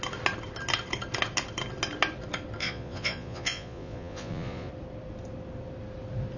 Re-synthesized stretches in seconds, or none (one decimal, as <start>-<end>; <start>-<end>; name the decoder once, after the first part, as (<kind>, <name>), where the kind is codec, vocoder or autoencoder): 2.6-4.7 (vocoder, Vocos)